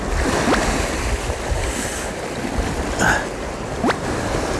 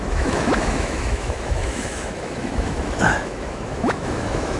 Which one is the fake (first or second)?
second